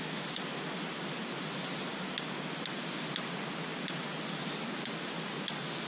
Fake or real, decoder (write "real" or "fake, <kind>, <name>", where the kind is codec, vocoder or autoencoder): real